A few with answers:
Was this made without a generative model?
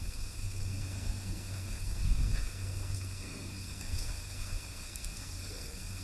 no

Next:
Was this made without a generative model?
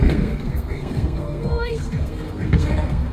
no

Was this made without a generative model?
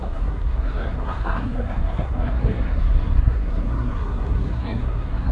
no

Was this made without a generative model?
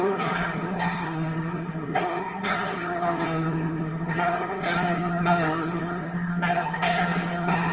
no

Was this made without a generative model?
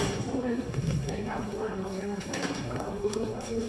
no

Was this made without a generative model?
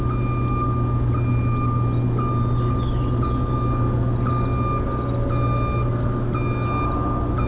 yes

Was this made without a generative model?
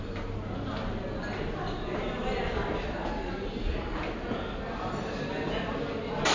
yes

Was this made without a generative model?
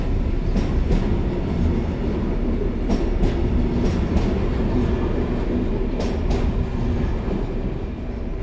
yes